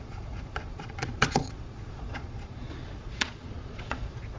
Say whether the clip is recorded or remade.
remade